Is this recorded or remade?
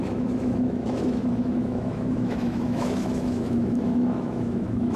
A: remade